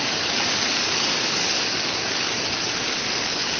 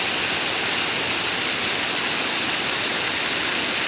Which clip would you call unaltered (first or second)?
second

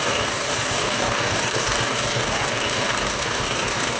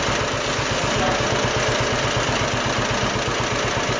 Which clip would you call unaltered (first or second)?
second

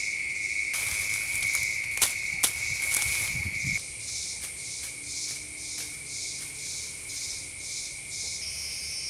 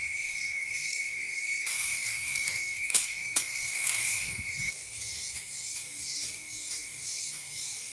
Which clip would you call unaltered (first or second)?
first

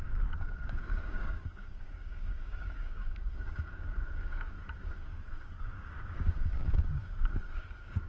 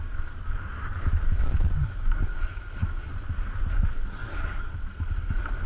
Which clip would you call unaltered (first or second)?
second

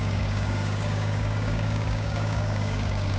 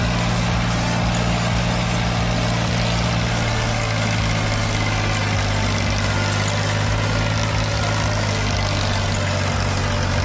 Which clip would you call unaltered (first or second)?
second